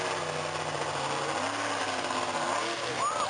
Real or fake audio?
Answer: real